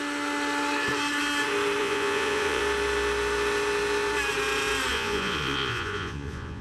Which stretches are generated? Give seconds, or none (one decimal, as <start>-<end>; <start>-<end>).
1.8-2.6; 4.9-6.6